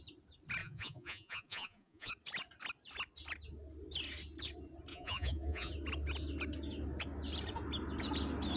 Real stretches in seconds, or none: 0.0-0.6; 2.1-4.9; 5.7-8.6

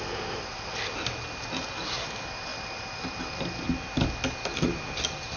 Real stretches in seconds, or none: 0.0-5.4

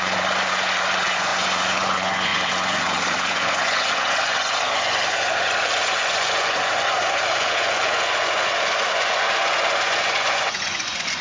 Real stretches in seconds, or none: none

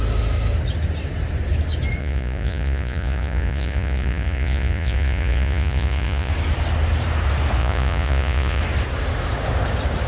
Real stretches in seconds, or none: 0.0-2.0; 6.3-7.6; 8.6-10.1

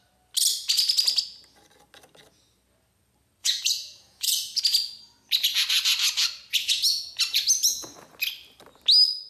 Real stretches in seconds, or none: 0.0-3.4; 4.6-6.6; 7.2-9.3